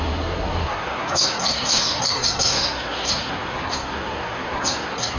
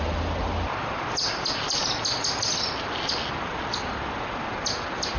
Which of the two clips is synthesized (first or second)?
first